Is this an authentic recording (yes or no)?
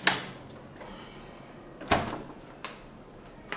yes